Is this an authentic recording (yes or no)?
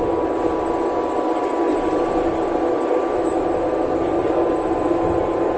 yes